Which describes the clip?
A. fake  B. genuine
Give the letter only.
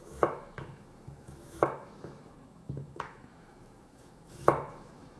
A